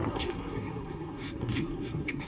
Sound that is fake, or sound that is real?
fake